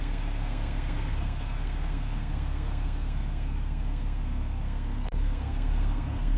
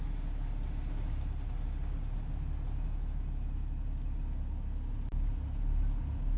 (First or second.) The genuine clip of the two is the second